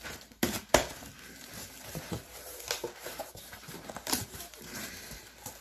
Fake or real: fake